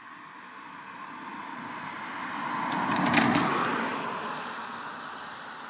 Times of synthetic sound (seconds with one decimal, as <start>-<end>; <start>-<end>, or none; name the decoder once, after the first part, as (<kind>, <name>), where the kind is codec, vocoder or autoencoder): none